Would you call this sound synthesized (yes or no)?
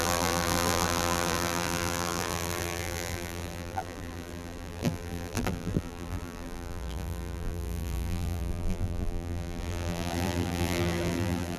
yes